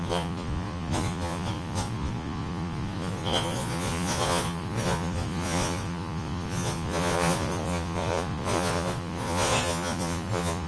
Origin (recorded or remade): remade